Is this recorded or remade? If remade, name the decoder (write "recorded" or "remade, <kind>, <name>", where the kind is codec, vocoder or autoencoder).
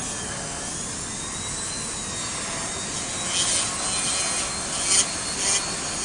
recorded